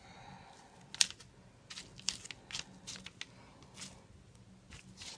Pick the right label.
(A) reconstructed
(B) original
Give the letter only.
B